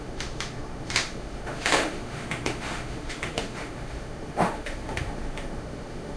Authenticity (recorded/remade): remade